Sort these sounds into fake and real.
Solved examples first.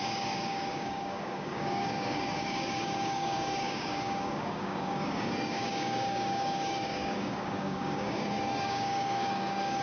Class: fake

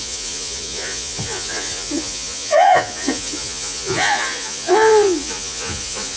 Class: fake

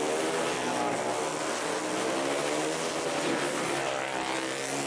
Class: real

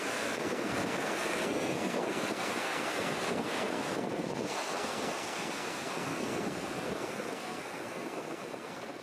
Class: fake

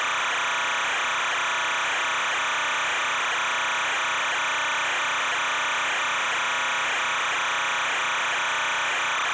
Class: real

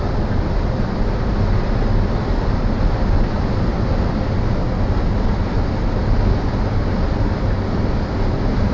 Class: real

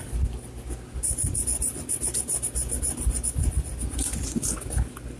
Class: real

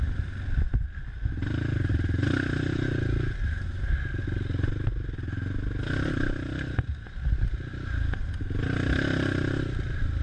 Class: real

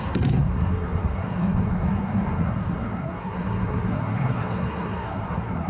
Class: fake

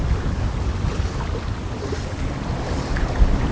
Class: real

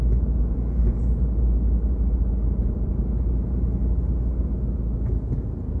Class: real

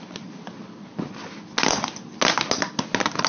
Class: real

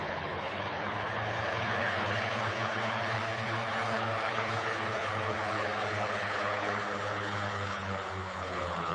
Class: fake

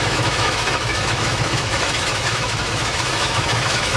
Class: fake